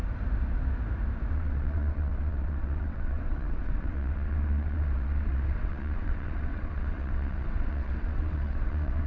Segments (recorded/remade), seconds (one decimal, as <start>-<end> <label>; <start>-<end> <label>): 0.0-1.3 recorded; 1.3-9.1 remade